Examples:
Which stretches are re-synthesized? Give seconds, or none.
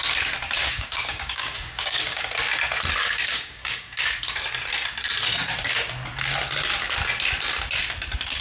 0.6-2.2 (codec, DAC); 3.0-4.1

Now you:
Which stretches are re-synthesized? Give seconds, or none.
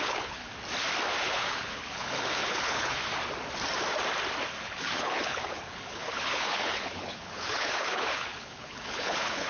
0.0-0.5 (codec, HILCodec); 1.2-3.0; 4.5-9.5